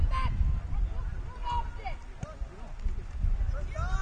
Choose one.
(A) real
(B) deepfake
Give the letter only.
A